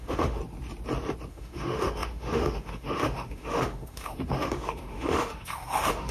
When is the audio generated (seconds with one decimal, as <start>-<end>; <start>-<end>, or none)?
0.0-0.4; 1.3-6.1